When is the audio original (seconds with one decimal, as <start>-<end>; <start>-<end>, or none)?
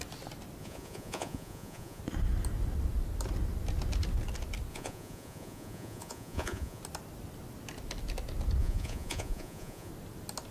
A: 0.0-0.6; 2.0-4.7; 6.8-8.6; 9.9-10.5